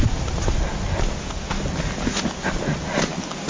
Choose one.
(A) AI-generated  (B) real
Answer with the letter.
B